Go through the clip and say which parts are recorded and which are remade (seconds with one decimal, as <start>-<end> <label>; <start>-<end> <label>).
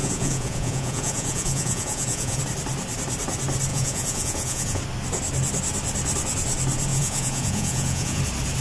0.0-2.4 remade; 2.4-3.7 recorded; 3.7-4.8 remade; 4.8-6.9 recorded; 6.9-8.2 remade; 8.2-8.6 recorded